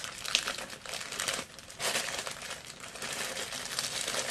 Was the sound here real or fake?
real